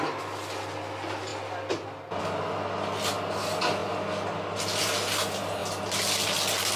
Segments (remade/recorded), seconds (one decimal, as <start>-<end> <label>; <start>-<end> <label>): 0.0-6.8 recorded